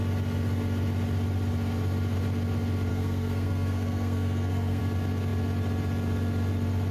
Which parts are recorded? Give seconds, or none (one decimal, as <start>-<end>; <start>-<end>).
0.0-2.9; 4.8-6.9